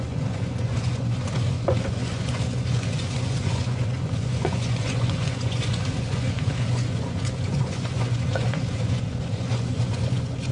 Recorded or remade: remade